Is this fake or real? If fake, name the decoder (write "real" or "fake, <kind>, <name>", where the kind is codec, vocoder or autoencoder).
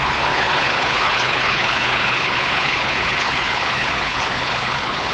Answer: fake, codec, HILCodec